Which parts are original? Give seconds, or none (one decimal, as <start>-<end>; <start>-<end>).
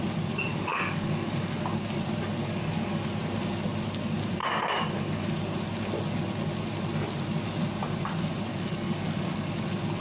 0.0-0.5; 1.6-2.4; 3.1-4.4; 5.3-8.5; 9.5-10.0